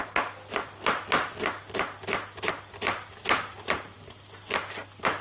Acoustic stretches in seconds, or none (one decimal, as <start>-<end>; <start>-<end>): 0.0-5.2